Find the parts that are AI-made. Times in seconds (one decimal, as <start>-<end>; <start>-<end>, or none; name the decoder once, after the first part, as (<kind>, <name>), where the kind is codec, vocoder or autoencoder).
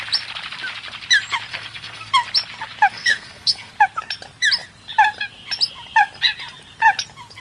1.5-2.1 (codec, SNAC); 2.9-3.7